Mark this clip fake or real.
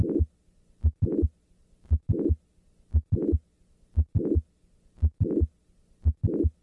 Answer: real